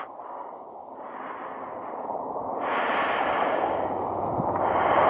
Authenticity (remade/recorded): recorded